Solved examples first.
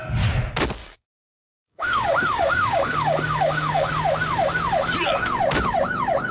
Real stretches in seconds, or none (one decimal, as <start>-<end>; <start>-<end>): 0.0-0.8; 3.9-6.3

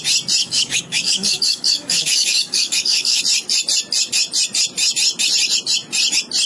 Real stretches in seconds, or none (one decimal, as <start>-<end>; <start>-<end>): 0.0-0.4; 3.2-6.5

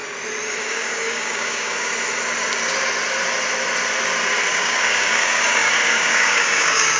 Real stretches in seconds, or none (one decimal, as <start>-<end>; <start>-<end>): 0.0-0.6; 1.9-4.5